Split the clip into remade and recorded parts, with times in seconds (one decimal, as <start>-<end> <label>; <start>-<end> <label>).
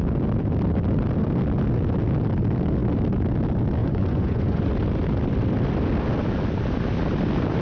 0.0-3.8 recorded; 3.8-4.7 remade; 4.7-7.6 recorded